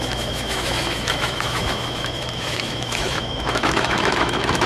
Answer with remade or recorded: remade